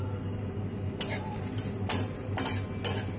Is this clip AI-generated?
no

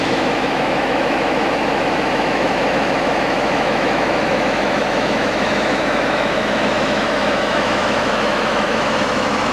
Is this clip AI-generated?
yes